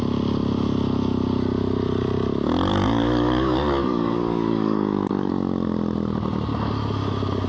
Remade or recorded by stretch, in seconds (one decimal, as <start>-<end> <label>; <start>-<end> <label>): 0.0-2.7 recorded; 2.7-5.3 remade; 5.3-7.5 recorded